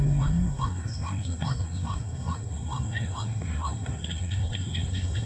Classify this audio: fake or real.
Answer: fake